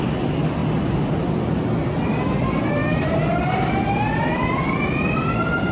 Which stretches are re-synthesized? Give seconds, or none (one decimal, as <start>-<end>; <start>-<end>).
none